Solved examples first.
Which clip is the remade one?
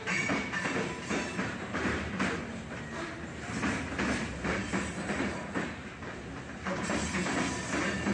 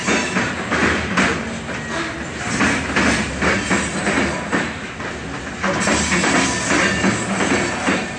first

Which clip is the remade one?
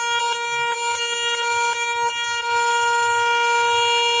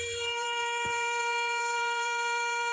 second